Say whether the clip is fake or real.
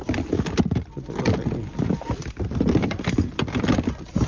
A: real